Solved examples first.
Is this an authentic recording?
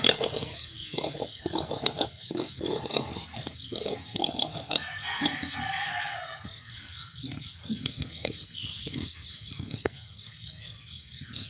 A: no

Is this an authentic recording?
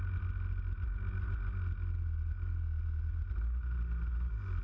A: yes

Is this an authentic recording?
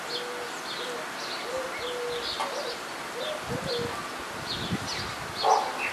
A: yes